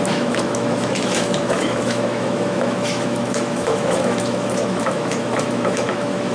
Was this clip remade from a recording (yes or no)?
yes